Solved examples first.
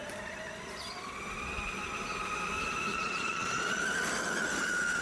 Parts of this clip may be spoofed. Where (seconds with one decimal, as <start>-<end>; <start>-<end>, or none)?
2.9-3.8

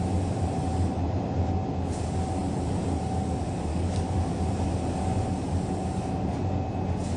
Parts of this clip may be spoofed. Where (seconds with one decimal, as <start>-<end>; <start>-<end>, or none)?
3.7-4.3

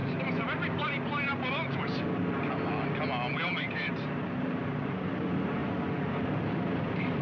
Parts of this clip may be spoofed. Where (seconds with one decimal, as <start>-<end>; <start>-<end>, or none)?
3.6-5.6; 6.6-7.2

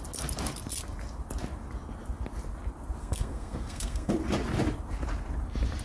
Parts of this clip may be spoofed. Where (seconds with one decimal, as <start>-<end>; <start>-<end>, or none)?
3.0-4.1

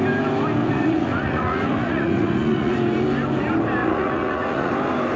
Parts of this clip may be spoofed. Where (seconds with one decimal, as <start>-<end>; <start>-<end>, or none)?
0.6-2.7; 3.8-4.7

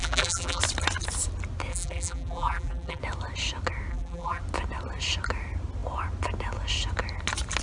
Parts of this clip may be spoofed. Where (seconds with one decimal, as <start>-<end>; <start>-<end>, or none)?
0.0-0.6; 1.7-3.0; 3.9-4.4

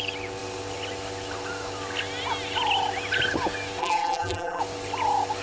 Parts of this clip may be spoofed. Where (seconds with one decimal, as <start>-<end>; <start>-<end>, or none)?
3.8-4.6

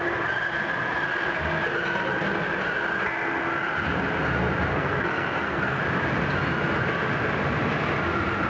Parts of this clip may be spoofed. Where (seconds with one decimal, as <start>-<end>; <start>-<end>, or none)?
4.7-5.8